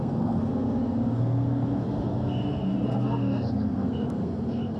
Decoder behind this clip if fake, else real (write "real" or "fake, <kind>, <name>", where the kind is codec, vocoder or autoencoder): fake, codec, SNAC